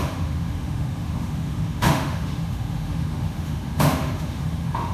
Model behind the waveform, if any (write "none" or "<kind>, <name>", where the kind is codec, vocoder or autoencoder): autoencoder, DAC-VAE